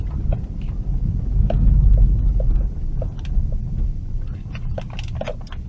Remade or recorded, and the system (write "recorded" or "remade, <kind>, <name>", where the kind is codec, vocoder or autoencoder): recorded